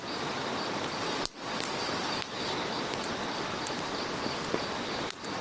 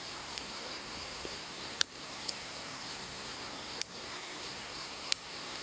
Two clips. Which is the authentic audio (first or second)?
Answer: first